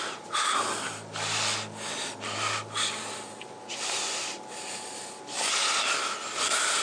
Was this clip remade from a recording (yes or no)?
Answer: no